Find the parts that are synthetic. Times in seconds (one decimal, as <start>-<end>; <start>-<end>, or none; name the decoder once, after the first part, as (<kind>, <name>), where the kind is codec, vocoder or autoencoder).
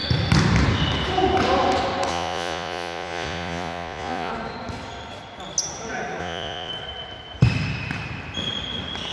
2.1-4.3 (vocoder, Vocos); 6.2-6.7